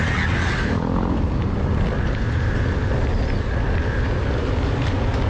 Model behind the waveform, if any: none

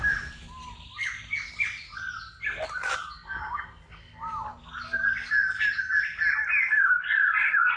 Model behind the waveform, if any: none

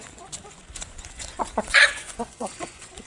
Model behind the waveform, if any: vocoder, Vocos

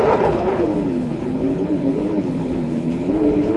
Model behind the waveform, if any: codec, HILCodec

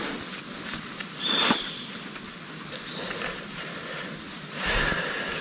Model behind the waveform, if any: none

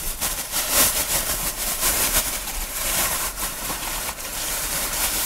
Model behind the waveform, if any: vocoder, BigVGAN v2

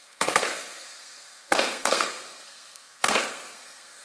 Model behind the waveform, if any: codec, SNAC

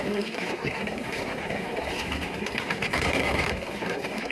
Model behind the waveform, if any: codec, SNAC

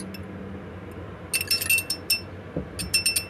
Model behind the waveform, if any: none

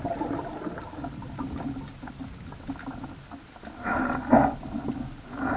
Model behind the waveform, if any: none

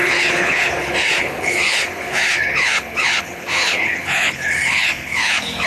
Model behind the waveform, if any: codec, HILCodec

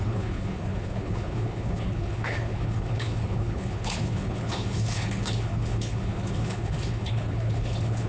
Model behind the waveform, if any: codec, HILCodec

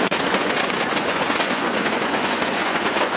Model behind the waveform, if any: vocoder, Vocos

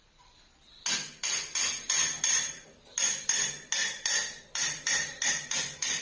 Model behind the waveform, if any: vocoder, BigVGAN v2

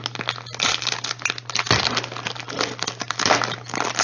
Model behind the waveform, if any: none